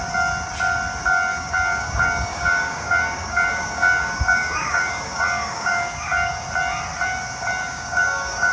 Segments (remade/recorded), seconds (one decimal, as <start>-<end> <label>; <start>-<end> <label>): 0.0-1.3 recorded; 1.3-6.3 remade; 6.3-7.6 recorded; 7.6-8.5 remade